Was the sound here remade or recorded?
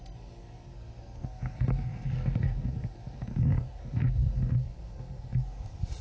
remade